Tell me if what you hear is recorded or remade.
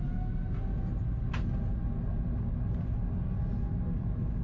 recorded